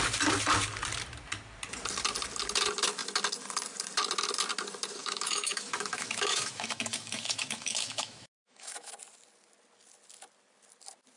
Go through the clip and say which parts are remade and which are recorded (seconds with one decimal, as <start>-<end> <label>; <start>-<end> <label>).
0.0-5.0 recorded; 5.0-8.9 remade; 8.9-11.2 recorded

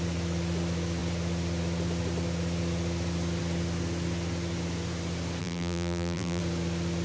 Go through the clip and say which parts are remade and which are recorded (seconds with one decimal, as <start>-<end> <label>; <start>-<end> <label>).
0.0-5.4 recorded; 5.4-6.4 remade; 6.4-7.0 recorded